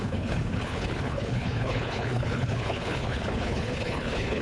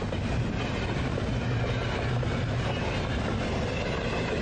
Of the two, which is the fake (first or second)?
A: first